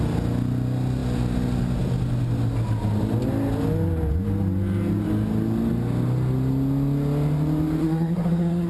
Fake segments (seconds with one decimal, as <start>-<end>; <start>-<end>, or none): 7.8-8.7